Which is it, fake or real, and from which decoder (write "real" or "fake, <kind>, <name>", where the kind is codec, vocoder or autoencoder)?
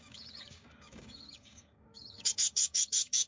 fake, codec, DAC